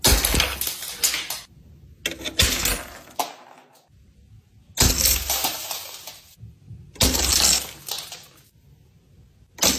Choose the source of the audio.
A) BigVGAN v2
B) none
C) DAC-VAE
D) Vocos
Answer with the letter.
B